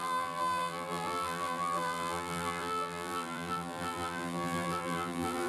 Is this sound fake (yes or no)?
yes